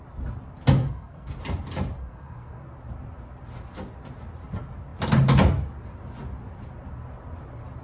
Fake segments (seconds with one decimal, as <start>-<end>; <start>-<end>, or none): 0.8-1.3; 2.0-2.6